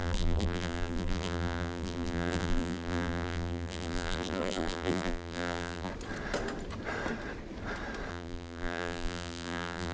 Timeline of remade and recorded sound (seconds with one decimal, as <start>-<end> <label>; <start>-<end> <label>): 0.0-5.9 remade; 5.9-8.1 recorded; 8.1-9.9 remade